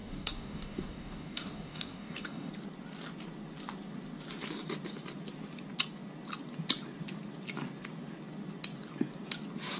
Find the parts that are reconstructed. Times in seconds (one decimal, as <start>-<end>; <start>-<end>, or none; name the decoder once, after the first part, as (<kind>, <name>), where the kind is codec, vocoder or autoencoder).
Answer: 0.0-2.5 (codec, DAC)